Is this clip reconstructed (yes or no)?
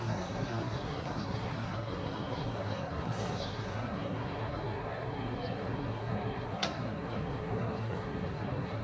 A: yes